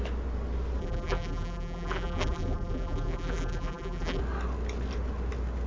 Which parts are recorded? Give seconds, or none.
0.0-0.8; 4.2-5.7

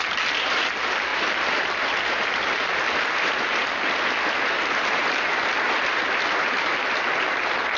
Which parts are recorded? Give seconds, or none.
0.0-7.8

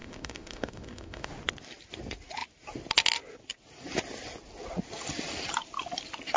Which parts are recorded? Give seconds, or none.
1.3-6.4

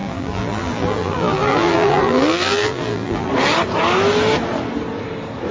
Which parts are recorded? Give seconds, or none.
3.3-5.5

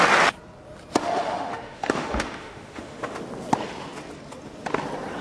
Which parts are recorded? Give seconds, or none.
0.0-1.0; 3.2-5.2

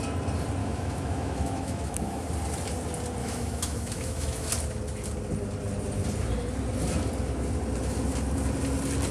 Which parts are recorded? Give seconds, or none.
0.0-0.6; 2.3-3.2; 4.5-9.1